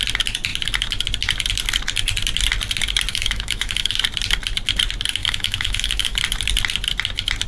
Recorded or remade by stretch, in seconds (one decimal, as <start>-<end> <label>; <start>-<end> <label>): 0.0-3.1 recorded; 3.1-3.9 remade; 3.9-5.2 recorded; 5.2-6.2 remade; 6.2-7.5 recorded